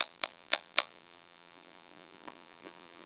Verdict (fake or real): fake